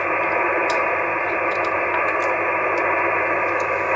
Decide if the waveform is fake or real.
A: real